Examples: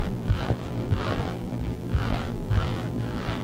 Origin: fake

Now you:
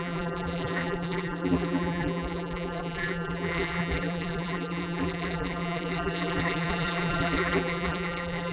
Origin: fake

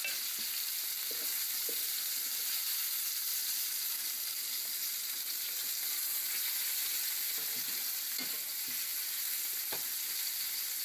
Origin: real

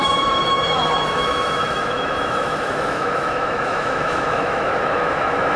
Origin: fake